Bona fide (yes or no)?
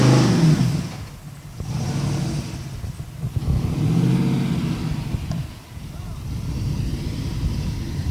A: yes